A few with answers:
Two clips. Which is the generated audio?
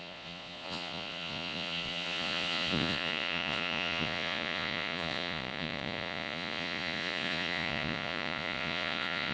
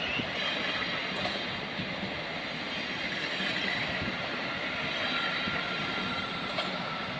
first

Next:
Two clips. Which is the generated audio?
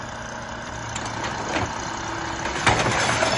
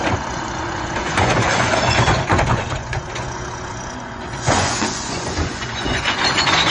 second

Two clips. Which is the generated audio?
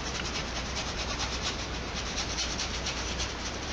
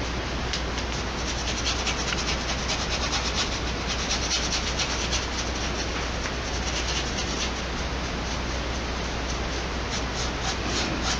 first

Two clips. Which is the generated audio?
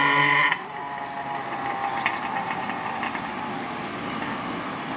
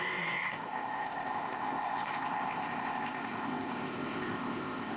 second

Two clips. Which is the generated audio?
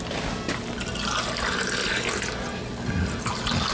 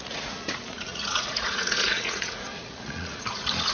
second